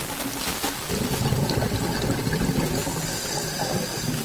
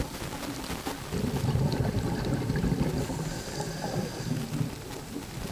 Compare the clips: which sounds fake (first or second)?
second